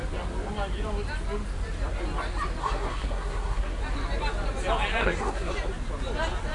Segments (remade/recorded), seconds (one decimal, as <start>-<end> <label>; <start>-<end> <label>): 0.0-2.6 recorded; 2.6-3.8 remade; 3.8-5.0 recorded; 5.0-5.5 remade; 5.5-6.5 recorded